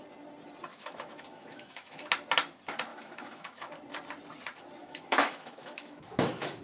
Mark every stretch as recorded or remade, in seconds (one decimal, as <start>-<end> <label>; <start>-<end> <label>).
0.0-0.7 recorded; 0.7-2.1 remade; 2.1-2.9 recorded; 2.9-3.7 remade; 3.7-4.8 recorded; 4.8-6.6 remade